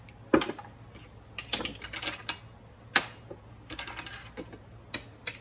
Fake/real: real